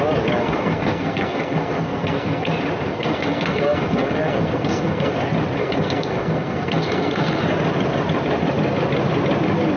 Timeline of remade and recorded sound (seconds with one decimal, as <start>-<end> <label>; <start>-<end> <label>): 0.0-0.4 recorded; 0.4-2.5 remade; 2.5-2.9 recorded; 2.9-5.1 remade; 5.1-5.6 recorded; 5.6-7.4 remade; 7.4-9.8 recorded